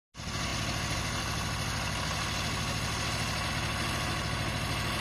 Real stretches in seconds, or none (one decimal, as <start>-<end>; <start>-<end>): 0.0-5.0